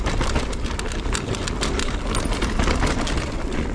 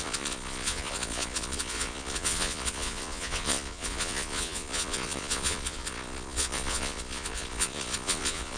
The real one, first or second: first